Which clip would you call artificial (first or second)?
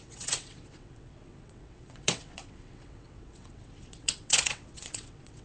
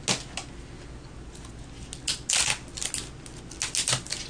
first